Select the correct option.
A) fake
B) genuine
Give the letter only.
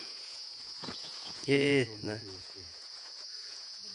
A